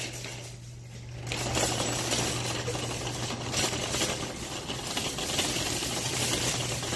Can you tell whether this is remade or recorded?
recorded